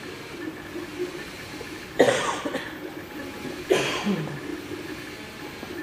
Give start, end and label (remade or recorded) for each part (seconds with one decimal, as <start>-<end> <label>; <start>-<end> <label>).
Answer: 0.0-5.8 recorded